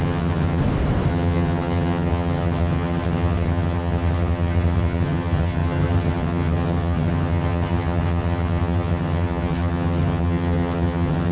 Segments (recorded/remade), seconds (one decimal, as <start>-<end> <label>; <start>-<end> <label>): 0.0-0.6 remade; 0.6-1.1 recorded; 1.1-11.3 remade